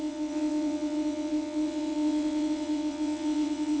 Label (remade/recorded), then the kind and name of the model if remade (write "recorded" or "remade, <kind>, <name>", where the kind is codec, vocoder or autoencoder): remade, vocoder, WaveNeXt